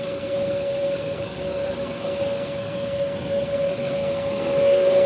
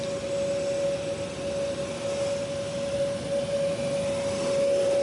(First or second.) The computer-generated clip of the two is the first